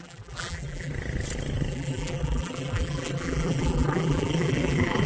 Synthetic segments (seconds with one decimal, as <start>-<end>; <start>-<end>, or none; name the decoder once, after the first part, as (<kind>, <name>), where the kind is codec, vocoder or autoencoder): 0.0-0.9 (vocoder, BigVGAN v2); 1.7-5.1